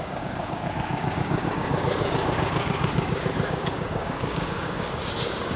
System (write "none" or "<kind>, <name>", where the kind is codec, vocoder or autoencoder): codec, DAC